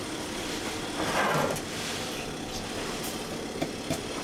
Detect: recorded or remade recorded